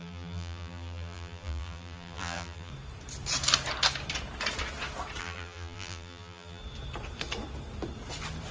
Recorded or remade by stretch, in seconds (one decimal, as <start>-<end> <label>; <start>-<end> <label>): 0.0-2.7 remade; 2.7-5.2 recorded; 5.2-6.6 remade; 6.6-8.5 recorded